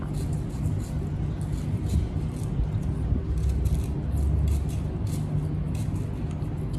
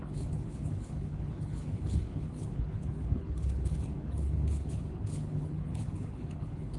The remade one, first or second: second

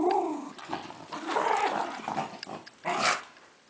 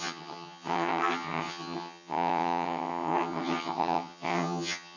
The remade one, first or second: second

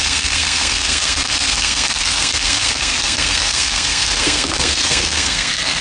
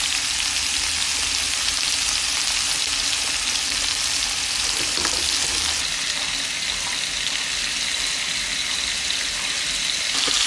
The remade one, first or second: first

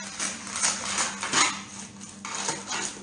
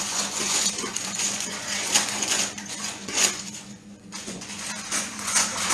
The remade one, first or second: second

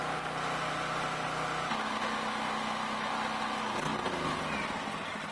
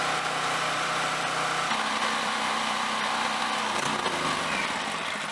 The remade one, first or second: second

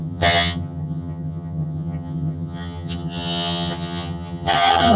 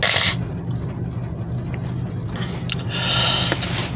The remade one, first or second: first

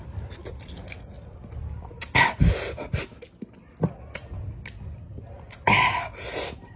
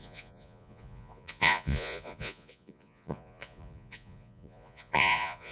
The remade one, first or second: second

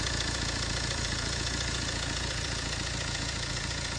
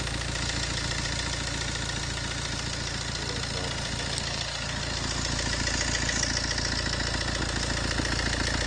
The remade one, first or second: first